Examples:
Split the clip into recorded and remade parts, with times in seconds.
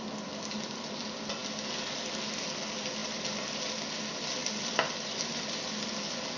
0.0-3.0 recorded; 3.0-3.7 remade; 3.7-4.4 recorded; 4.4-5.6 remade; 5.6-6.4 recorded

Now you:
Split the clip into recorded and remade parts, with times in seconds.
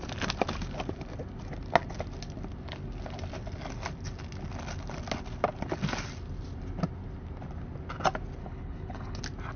0.0-8.4 recorded; 8.4-9.2 remade; 9.2-9.6 recorded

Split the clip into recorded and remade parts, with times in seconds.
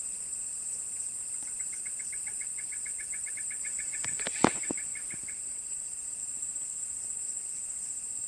0.0-2.5 recorded; 2.5-3.3 remade; 3.3-8.3 recorded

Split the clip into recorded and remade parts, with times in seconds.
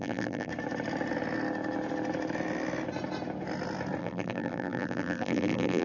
0.0-0.5 remade; 0.5-4.0 recorded; 4.0-5.8 remade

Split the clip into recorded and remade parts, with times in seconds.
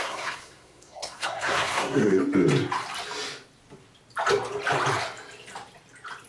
0.0-2.2 remade; 2.2-6.3 recorded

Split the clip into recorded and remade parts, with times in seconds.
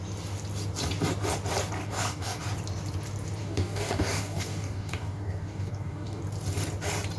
0.0-1.8 recorded; 1.8-2.4 remade; 2.4-3.4 recorded; 3.4-6.2 remade; 6.2-7.2 recorded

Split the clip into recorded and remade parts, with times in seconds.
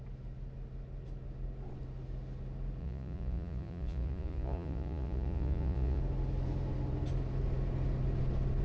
0.0-2.8 recorded; 2.8-6.0 remade; 6.0-8.6 recorded